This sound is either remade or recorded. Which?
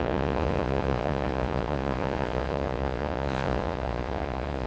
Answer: remade